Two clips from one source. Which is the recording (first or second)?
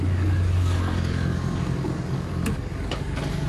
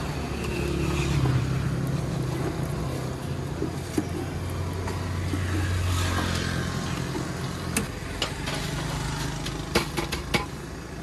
second